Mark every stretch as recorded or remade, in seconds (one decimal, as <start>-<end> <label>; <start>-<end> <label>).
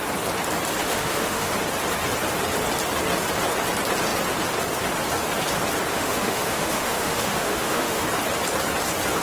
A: 0.0-0.8 recorded; 0.8-1.5 remade; 1.5-5.9 recorded; 5.9-8.0 remade; 8.0-9.2 recorded